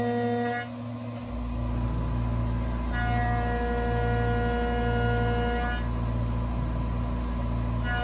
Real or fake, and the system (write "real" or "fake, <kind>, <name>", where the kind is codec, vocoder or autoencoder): real